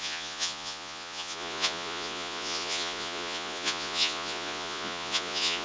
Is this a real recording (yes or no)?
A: no